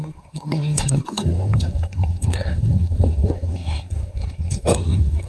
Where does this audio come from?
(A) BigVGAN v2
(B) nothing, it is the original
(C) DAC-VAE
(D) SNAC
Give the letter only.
D